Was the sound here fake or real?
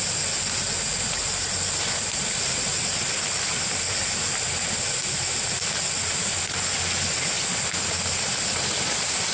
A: real